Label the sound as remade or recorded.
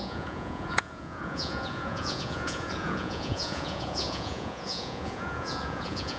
remade